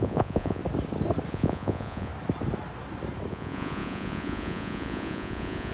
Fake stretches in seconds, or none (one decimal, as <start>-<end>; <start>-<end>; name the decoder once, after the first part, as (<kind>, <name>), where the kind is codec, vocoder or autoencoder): 0.0-0.6 (vocoder, Vocos); 1.3-2.1; 3.3-5.7